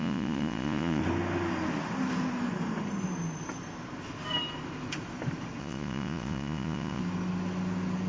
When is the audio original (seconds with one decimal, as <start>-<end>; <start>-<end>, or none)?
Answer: 1.0-5.6; 7.0-8.1